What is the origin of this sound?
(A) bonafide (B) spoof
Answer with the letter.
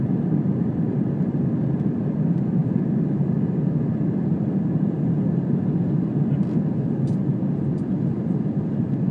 B